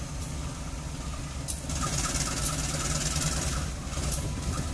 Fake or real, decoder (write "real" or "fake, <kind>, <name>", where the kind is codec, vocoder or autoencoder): real